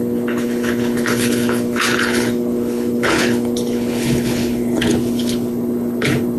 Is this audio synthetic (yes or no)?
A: yes